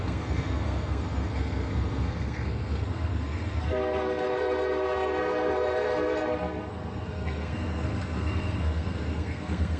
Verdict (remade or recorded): remade